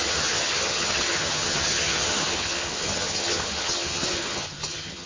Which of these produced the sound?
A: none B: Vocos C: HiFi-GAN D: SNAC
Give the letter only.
C